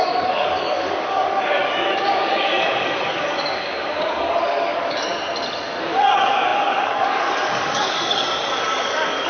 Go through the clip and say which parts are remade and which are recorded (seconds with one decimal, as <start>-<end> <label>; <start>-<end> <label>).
0.0-5.1 remade; 5.1-5.8 recorded; 5.8-9.3 remade